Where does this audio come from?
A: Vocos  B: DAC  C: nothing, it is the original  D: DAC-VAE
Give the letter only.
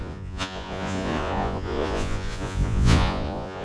A